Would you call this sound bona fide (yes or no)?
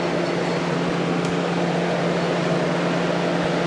yes